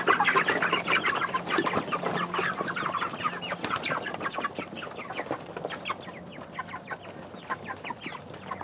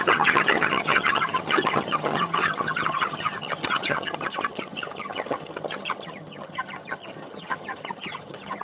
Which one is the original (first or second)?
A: first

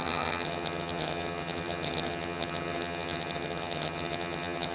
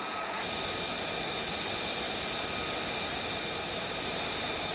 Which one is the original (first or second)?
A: second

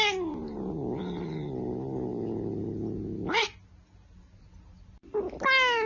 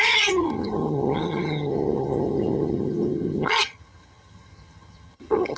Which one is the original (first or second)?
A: first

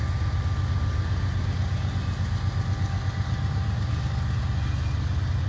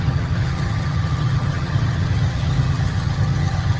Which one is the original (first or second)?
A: first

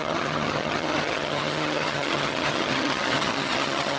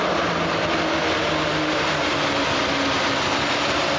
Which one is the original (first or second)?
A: second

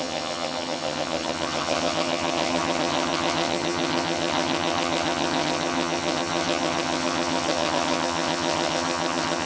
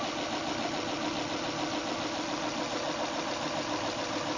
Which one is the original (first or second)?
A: second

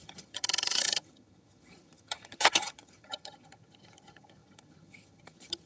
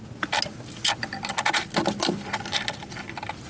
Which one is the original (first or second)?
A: second